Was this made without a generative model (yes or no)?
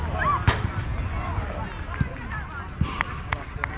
yes